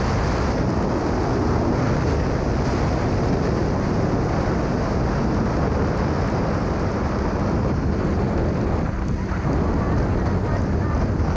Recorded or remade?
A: recorded